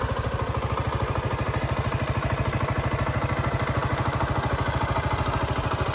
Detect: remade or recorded recorded